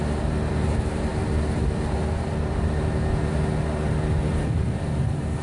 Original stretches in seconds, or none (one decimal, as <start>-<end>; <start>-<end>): 0.0-5.4